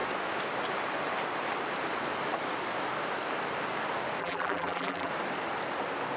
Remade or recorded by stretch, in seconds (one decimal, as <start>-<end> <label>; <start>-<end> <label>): 0.0-4.2 recorded; 4.2-5.1 remade; 5.1-6.2 recorded